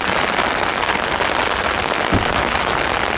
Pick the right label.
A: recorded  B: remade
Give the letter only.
A